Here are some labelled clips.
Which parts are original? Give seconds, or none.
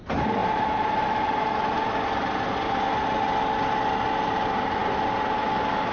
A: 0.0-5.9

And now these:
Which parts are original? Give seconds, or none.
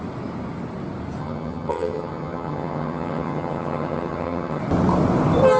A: 0.0-1.2; 4.6-5.6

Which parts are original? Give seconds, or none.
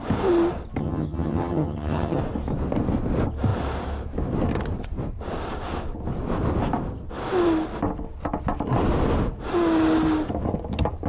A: 0.0-0.8; 2.2-11.1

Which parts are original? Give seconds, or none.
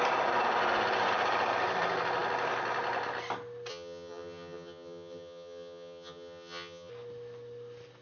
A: 0.0-3.7; 6.9-8.0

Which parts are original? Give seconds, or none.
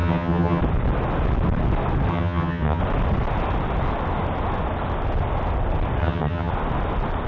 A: 0.6-2.1; 2.8-6.0; 6.5-7.3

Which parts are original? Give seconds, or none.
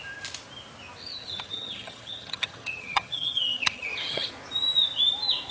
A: 0.0-1.0; 4.3-5.5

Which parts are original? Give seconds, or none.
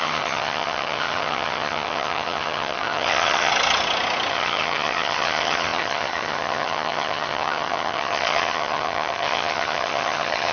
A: 3.5-4.3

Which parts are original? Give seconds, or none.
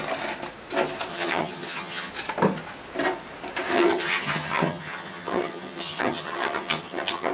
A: 0.0-1.1; 2.1-3.7